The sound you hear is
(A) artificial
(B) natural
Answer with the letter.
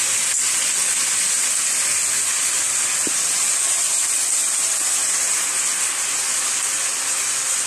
B